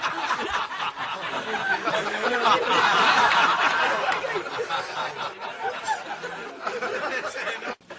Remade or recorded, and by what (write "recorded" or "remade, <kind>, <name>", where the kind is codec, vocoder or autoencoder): recorded